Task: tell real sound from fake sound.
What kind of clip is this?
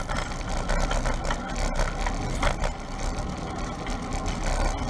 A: real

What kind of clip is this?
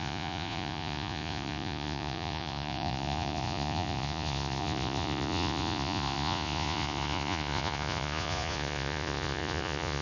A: fake